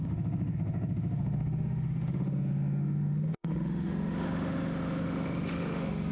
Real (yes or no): no